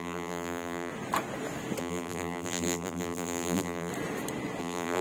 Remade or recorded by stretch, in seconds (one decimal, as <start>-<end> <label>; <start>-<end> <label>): 0.0-0.9 remade; 0.9-1.8 recorded; 1.8-3.9 remade; 3.9-4.6 recorded; 4.6-5.0 remade